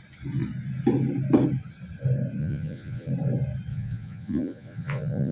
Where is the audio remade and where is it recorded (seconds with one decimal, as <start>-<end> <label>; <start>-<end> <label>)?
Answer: 0.0-2.4 recorded; 2.4-3.1 remade; 3.1-3.7 recorded; 3.7-5.3 remade